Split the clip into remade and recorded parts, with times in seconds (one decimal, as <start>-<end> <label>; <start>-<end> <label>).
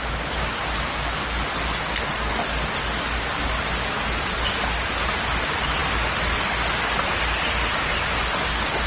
0.0-8.9 recorded